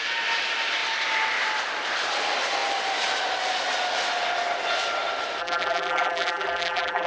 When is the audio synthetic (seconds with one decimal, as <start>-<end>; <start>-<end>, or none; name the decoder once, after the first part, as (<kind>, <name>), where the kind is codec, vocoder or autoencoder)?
5.4-7.1 (vocoder, BigVGAN v2)